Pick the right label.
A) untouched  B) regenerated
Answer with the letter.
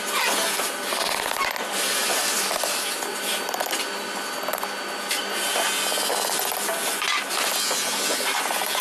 A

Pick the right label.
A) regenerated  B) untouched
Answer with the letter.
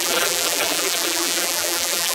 A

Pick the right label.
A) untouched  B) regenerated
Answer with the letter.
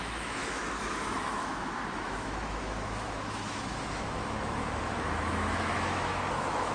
B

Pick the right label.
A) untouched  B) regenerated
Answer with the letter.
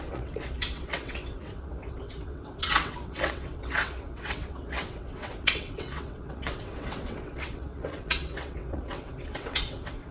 B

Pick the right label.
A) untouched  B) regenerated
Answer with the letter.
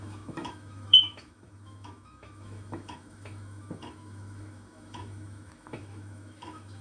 B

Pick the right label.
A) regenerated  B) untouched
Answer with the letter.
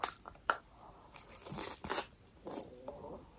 B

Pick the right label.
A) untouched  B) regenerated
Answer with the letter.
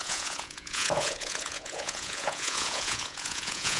B